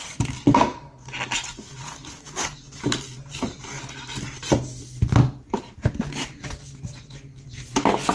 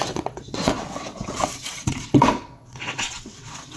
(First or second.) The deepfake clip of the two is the second